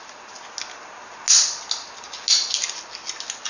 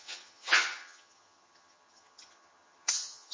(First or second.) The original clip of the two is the first